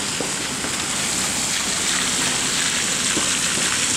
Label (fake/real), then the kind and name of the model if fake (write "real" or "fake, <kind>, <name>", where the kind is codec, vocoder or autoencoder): real